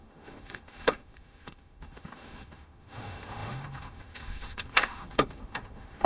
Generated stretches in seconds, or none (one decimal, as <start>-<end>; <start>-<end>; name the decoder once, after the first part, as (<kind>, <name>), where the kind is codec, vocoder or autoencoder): 0.0-6.1 (autoencoder, DAC-VAE)